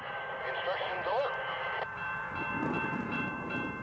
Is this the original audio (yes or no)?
no